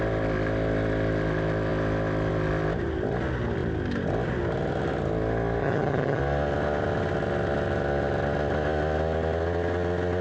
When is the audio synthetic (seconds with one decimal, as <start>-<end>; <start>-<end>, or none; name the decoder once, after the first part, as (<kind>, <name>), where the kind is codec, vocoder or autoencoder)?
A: 5.6-6.2 (vocoder, HiFi-GAN)